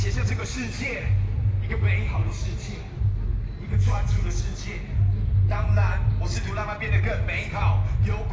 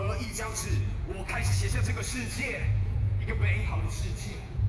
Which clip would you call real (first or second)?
first